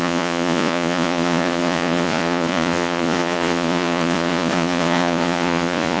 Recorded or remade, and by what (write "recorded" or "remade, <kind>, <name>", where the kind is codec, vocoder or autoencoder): remade, vocoder, Vocos